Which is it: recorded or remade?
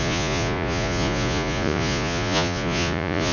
remade